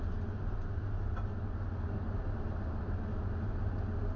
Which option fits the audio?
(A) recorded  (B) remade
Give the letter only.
A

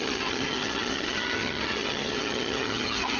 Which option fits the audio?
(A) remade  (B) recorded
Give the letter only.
A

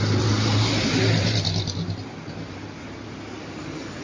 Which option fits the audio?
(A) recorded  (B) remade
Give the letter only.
A